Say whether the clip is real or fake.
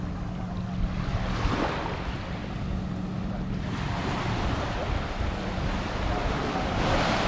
real